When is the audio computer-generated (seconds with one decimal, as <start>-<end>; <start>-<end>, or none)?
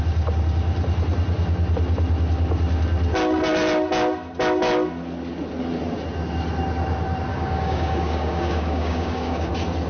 7.3-9.5